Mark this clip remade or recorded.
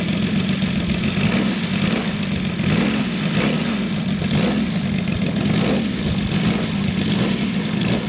recorded